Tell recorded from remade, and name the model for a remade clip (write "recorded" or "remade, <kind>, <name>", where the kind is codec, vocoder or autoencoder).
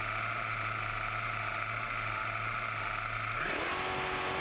recorded